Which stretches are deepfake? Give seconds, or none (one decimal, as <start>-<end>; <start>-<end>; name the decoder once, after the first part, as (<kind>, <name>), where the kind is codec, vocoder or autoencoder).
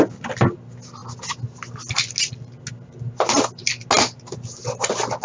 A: none